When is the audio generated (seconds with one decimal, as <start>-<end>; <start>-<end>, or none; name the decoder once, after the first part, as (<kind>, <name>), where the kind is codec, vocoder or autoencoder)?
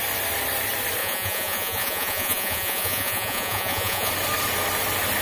1.0-4.1 (vocoder, Vocos)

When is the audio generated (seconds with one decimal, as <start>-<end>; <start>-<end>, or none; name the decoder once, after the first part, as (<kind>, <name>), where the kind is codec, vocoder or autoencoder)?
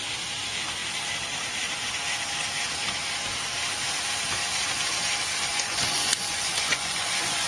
5.5-7.5 (vocoder, Vocos)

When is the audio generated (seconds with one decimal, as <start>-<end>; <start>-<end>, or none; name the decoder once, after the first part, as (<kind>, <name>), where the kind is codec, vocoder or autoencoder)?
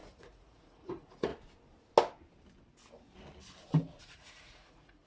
0.0-1.3 (vocoder, Vocos); 4.0-5.1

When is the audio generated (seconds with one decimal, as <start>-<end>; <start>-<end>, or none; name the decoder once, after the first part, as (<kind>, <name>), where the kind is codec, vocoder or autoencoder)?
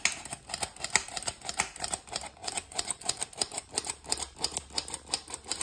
2.4-3.2 (vocoder, Vocos)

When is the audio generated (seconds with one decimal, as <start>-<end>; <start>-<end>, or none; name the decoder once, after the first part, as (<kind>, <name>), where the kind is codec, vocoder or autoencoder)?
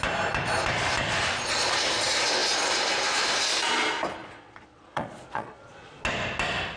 4.2-6.0 (vocoder, Vocos)